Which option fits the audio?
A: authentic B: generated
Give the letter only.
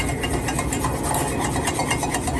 A